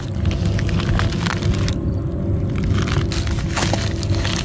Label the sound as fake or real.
real